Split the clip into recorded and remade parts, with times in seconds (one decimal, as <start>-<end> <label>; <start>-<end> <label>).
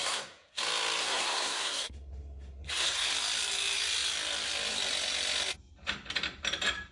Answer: 0.0-0.6 remade; 0.6-1.0 recorded; 1.0-3.1 remade; 3.1-6.9 recorded